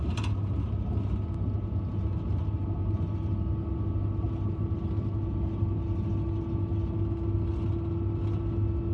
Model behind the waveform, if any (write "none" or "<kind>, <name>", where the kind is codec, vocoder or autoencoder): none